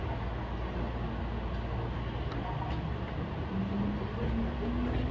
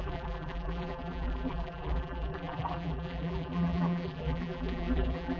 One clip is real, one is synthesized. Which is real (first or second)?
first